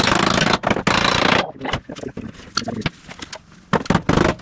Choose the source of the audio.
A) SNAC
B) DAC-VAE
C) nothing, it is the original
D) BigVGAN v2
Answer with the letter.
C